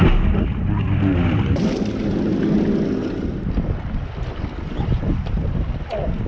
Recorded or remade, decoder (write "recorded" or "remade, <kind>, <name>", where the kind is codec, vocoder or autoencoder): recorded